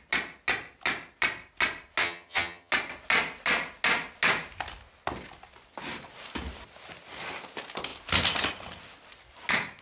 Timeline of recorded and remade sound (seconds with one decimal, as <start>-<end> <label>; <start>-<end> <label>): 0.0-2.0 recorded; 2.0-2.7 remade; 2.7-9.8 recorded

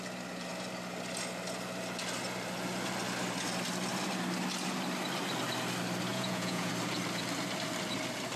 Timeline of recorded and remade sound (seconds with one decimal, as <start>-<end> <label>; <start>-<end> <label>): 0.0-6.1 recorded; 6.1-6.7 remade; 6.7-8.4 recorded

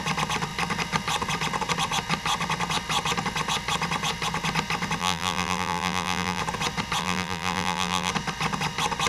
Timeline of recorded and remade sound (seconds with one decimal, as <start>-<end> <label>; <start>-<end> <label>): 0.0-5.0 recorded; 5.0-6.4 remade; 6.4-7.0 recorded; 7.0-8.1 remade; 8.1-9.1 recorded

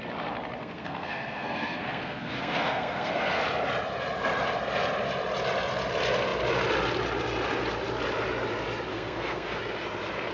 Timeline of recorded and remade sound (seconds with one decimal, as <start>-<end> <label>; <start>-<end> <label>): 0.0-0.6 recorded; 0.6-3.4 remade; 3.4-8.9 recorded; 8.9-9.6 remade; 9.6-10.3 recorded

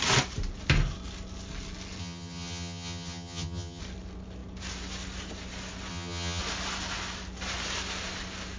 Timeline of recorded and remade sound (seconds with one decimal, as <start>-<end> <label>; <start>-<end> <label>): 0.0-2.0 recorded; 2.0-3.8 remade; 3.8-5.9 recorded; 5.9-6.4 remade; 6.4-8.6 recorded

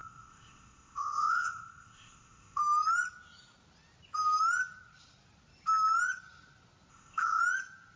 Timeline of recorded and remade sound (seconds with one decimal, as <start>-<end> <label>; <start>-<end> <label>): 0.0-2.6 remade; 2.6-6.9 recorded; 6.9-7.4 remade; 7.4-8.0 recorded

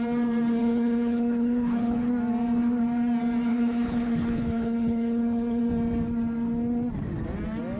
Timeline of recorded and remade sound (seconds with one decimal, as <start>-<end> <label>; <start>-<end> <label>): 0.0-0.6 recorded; 0.6-2.1 remade; 2.1-3.5 recorded; 3.5-5.6 remade; 5.6-7.8 recorded